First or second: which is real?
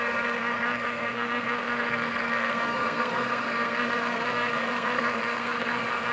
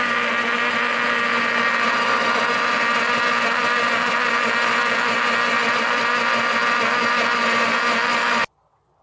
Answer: second